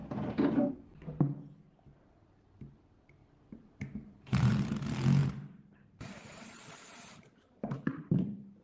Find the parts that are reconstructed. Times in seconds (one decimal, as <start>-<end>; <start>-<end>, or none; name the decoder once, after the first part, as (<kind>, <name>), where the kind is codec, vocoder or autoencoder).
3.2-4.5 (vocoder, BigVGAN v2); 5.2-8.6